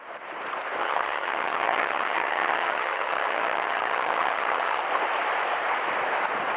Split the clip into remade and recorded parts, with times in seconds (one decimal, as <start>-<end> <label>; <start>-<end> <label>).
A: 0.0-0.8 recorded; 0.8-4.8 remade; 4.8-6.6 recorded